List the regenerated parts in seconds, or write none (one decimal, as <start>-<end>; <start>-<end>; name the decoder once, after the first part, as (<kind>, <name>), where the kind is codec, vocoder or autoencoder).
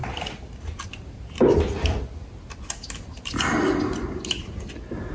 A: none